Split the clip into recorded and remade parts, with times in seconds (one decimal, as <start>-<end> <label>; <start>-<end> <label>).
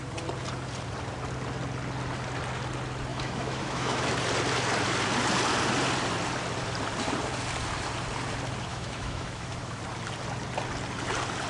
0.0-3.1 recorded; 3.1-4.1 remade; 4.1-8.7 recorded; 8.7-9.8 remade; 9.8-11.5 recorded